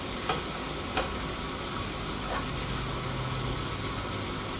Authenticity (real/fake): real